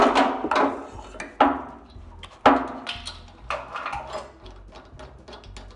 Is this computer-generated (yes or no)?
no